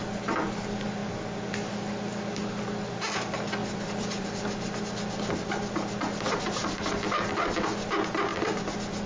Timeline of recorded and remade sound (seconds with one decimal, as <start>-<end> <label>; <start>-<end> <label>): 0.0-3.6 recorded; 3.6-4.8 remade; 4.8-6.6 recorded; 6.6-7.7 remade; 7.7-9.1 recorded